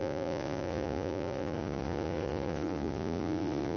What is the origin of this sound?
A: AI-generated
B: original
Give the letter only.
A